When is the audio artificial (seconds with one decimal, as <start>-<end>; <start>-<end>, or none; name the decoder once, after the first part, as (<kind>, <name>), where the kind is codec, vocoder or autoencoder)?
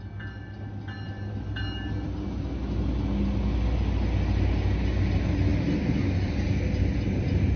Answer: none